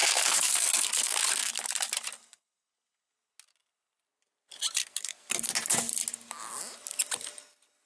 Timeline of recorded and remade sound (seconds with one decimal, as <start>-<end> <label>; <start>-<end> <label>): 0.0-1.5 remade; 1.5-4.8 recorded; 4.8-5.3 remade; 5.3-7.9 recorded